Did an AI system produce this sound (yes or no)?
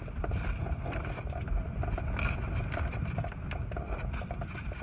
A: yes